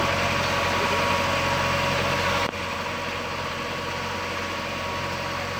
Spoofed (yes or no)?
no